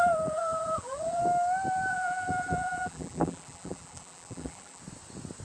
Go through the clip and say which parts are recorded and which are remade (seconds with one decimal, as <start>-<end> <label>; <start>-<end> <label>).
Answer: 0.0-1.2 remade; 1.2-1.9 recorded; 1.9-4.8 remade; 4.8-5.4 recorded